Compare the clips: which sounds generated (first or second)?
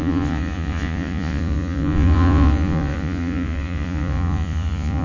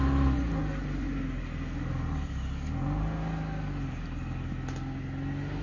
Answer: first